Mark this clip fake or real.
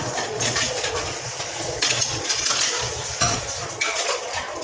fake